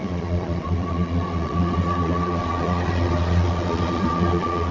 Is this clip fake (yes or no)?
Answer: yes